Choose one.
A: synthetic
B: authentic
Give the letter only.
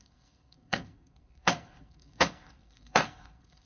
A